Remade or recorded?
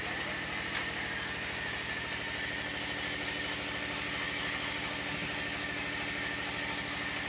recorded